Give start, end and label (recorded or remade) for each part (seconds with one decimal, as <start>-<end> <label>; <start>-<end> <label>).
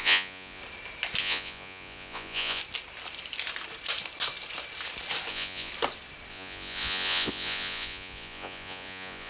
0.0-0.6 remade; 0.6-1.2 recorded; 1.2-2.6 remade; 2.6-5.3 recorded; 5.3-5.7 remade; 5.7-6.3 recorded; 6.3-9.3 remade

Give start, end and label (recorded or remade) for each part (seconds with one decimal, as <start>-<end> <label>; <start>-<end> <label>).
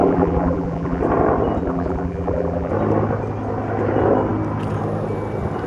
0.0-1.0 remade; 1.0-1.6 recorded; 1.6-2.7 remade; 2.7-5.7 recorded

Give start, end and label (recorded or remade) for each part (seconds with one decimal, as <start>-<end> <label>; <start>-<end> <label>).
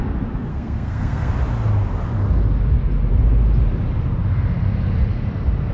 0.0-0.5 recorded; 0.5-1.3 remade; 1.3-5.7 recorded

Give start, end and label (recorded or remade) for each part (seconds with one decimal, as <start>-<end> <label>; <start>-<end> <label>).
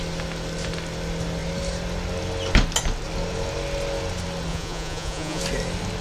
0.0-4.5 recorded; 4.5-5.4 remade; 5.4-6.0 recorded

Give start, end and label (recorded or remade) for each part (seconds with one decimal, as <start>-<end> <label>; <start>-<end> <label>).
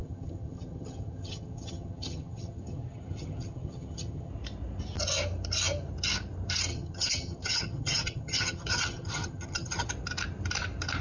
0.0-4.3 remade; 4.3-6.7 recorded; 6.7-9.9 remade; 9.9-11.0 recorded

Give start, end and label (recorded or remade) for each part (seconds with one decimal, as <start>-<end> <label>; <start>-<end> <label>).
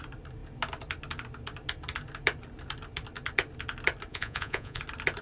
0.0-4.1 recorded; 4.1-4.8 remade; 4.8-5.2 recorded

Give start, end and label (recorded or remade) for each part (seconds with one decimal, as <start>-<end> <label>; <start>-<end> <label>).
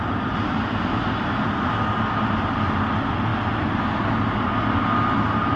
0.0-5.6 recorded